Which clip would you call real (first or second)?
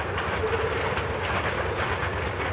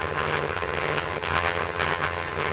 first